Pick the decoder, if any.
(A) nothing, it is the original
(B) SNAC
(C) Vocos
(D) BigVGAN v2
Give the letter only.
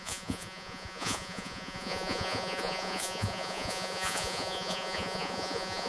C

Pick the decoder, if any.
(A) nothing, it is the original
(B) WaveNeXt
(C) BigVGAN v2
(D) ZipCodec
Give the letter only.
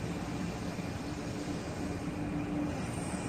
A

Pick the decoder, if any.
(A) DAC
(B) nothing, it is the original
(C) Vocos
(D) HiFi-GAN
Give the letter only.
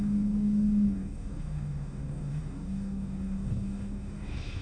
A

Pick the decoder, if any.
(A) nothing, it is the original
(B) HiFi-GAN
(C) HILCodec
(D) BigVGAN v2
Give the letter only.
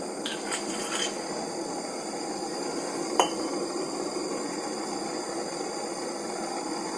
D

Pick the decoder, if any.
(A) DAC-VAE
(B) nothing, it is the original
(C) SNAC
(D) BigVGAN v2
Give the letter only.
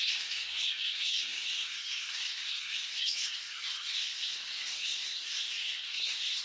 C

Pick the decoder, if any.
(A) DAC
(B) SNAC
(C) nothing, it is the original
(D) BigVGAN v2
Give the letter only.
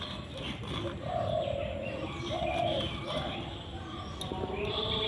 C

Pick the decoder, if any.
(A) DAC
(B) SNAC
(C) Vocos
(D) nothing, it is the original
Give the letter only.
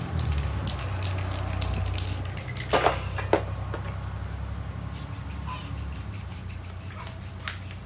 D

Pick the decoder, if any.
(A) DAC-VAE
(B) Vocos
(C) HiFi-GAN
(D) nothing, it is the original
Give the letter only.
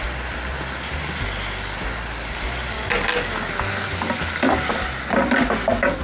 D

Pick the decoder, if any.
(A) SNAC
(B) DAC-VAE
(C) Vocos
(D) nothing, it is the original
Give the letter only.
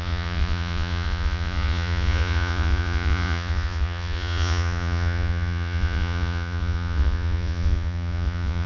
C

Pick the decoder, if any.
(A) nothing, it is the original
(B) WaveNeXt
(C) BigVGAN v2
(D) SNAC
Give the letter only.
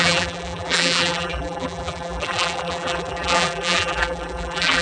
C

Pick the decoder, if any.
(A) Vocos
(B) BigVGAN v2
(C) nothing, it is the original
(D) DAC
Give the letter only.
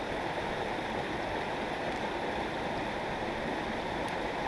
B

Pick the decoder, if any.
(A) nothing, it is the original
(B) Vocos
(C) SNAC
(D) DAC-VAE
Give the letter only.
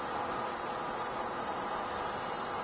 A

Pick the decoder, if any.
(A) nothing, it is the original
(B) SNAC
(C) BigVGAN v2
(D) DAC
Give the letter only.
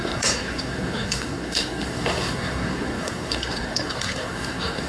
B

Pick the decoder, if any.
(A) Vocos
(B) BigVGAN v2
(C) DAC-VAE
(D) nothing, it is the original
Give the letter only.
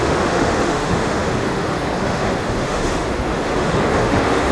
C